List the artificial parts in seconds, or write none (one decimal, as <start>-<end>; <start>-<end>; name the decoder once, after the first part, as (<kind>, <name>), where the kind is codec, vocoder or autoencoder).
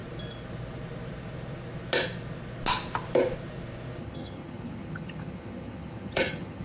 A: 4.0-6.6 (vocoder, HiFi-GAN)